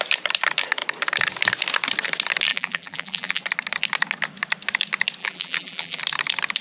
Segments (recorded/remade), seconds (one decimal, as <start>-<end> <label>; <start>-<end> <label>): 0.0-2.5 recorded; 2.5-3.4 remade; 3.4-5.2 recorded; 5.2-6.0 remade; 6.0-6.6 recorded